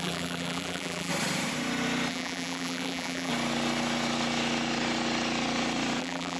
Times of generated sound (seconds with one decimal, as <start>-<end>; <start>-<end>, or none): 0.0-1.1; 2.1-3.3; 6.0-6.4